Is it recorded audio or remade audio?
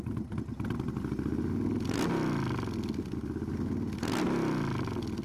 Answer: recorded